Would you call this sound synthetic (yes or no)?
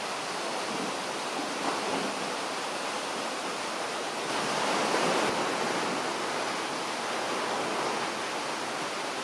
no